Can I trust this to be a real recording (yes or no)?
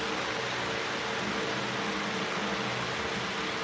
yes